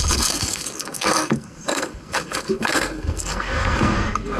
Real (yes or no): no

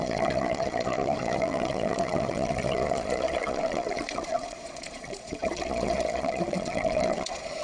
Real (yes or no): no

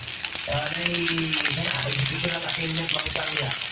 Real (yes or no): yes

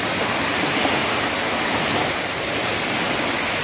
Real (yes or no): yes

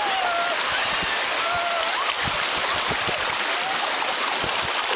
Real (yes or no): yes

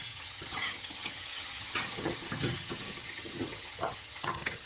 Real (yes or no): no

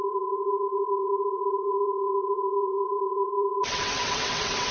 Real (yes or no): no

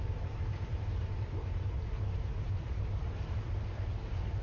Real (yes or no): no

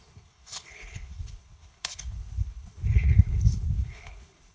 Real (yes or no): no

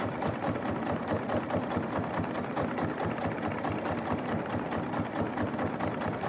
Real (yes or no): yes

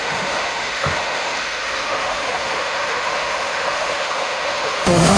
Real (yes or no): no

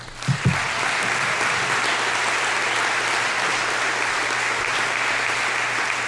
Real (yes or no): yes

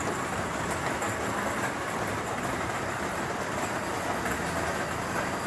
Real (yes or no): yes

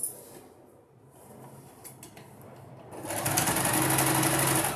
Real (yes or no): yes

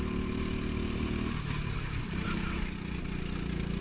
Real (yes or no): yes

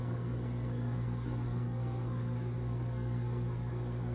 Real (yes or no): no